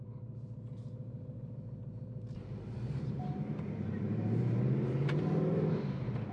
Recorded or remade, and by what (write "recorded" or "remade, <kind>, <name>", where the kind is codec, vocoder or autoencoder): remade, vocoder, BigVGAN v2